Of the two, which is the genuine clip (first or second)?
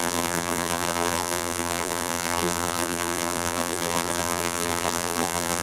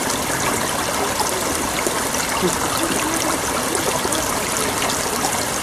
second